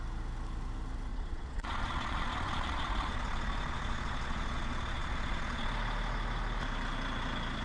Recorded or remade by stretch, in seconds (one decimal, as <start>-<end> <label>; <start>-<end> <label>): 0.0-1.1 recorded; 1.1-5.7 remade; 5.7-7.6 recorded